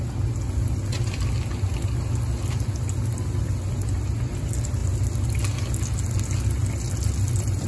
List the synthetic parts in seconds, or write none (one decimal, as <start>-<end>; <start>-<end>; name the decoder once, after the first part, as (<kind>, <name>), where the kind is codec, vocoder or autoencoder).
none